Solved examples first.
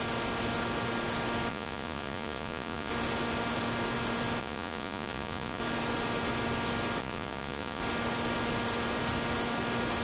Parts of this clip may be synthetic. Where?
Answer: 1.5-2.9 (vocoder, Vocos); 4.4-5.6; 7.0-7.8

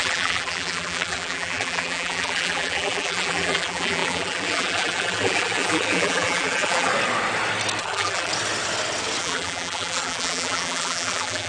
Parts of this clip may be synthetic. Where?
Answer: 0.0-6.9 (vocoder, BigVGAN v2); 7.8-8.3; 9.2-11.5

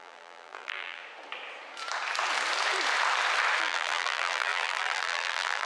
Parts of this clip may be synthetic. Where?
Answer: 0.0-1.0 (vocoder, BigVGAN v2); 3.6-5.7

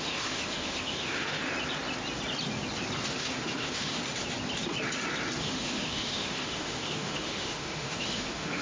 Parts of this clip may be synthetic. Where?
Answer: 0.0-1.5 (autoencoder, DAC-VAE); 3.1-4.0; 5.4-8.6